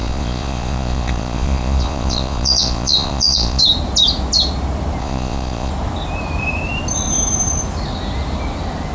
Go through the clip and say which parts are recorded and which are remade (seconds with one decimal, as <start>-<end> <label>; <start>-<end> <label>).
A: 0.0-3.6 remade; 3.6-5.0 recorded; 5.0-5.7 remade; 5.7-8.9 recorded

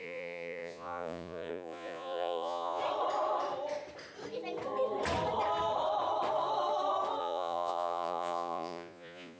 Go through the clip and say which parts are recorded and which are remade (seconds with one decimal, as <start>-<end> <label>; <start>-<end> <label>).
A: 0.0-2.8 remade; 2.8-7.2 recorded; 7.2-9.4 remade

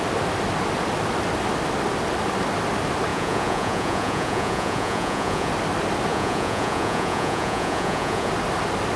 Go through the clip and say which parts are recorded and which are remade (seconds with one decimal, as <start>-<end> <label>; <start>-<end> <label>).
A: 0.0-3.1 recorded; 3.1-5.5 remade; 5.5-6.1 recorded; 6.1-8.3 remade; 8.3-9.0 recorded

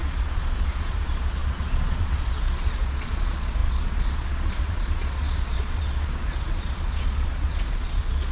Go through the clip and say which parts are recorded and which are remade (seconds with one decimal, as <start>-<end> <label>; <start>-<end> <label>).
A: 0.0-8.3 remade

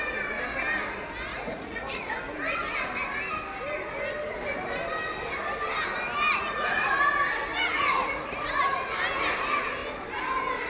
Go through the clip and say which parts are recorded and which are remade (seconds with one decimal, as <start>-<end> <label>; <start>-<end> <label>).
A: 0.0-1.3 recorded; 1.3-2.2 remade; 2.2-6.3 recorded; 6.3-7.1 remade; 7.1-7.5 recorded; 7.5-8.6 remade; 8.6-10.7 recorded